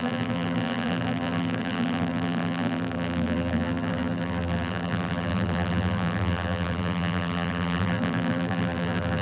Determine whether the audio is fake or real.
fake